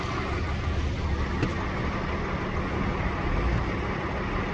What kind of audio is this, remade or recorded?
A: recorded